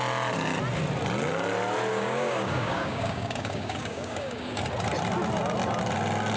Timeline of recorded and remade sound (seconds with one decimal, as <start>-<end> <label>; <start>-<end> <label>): 0.0-1.9 recorded; 1.9-4.6 remade; 4.6-6.4 recorded